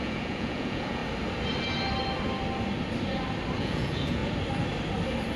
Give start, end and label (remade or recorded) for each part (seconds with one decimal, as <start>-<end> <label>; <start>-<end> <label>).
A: 0.0-1.0 remade; 1.0-3.6 recorded; 3.6-4.2 remade; 4.2-5.4 recorded